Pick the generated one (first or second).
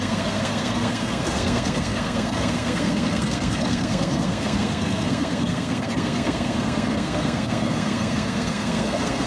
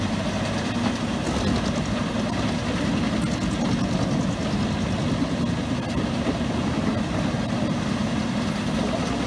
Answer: first